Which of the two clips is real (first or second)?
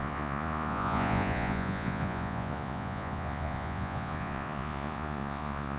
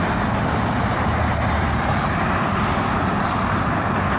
second